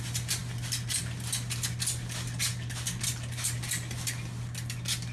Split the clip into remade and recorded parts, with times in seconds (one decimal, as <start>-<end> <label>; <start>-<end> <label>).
0.0-5.1 recorded